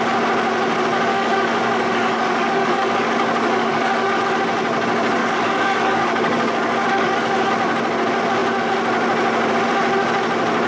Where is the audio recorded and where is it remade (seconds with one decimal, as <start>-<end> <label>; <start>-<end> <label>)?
0.0-1.1 recorded; 1.1-4.2 remade; 4.2-5.2 recorded; 5.2-7.5 remade; 7.5-10.7 recorded